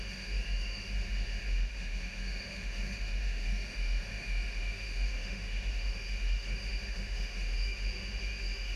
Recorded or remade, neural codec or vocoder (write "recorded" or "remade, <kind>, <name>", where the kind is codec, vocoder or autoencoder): remade, autoencoder, DAC-VAE